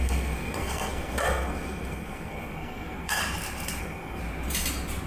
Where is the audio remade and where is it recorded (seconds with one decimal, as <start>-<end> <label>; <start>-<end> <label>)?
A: 0.0-3.2 remade; 3.2-3.8 recorded; 3.8-4.2 remade; 4.2-5.1 recorded